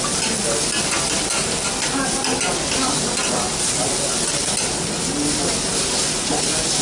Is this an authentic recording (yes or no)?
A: yes